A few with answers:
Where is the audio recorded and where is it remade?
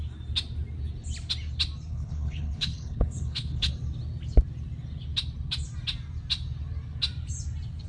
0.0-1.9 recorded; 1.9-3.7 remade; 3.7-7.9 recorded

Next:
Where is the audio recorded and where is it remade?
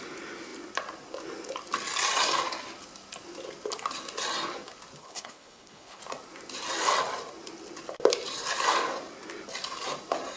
0.0-5.0 recorded; 5.0-6.0 remade; 6.0-10.4 recorded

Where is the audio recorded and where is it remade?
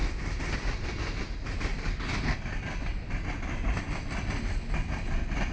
0.0-5.5 recorded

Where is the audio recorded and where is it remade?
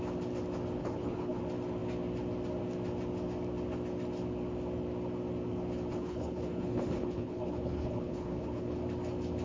0.0-0.8 recorded; 0.8-1.4 remade; 1.4-5.9 recorded; 5.9-8.8 remade; 8.8-9.4 recorded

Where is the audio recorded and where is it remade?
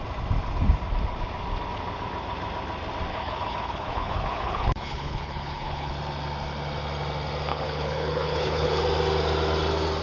0.0-3.1 recorded; 3.1-5.9 remade; 5.9-7.5 recorded; 7.5-8.8 remade; 8.8-10.0 recorded